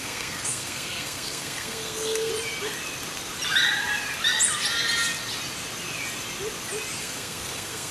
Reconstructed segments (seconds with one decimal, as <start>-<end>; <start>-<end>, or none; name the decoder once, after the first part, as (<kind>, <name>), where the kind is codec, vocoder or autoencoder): 0.0-2.3 (codec, SNAC); 7.0-7.9